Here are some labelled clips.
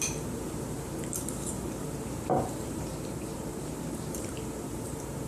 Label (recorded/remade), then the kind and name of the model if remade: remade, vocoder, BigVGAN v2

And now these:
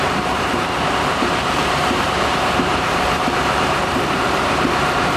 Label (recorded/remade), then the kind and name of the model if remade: remade, vocoder, BigVGAN v2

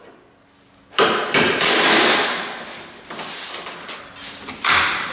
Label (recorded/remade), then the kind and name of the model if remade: recorded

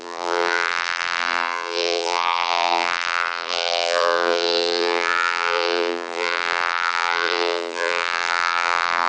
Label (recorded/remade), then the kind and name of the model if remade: remade, vocoder, BigVGAN v2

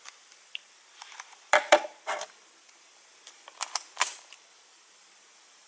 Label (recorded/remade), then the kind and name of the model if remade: remade, vocoder, BigVGAN v2